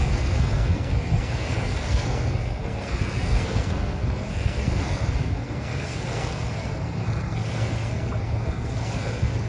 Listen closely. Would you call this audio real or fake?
fake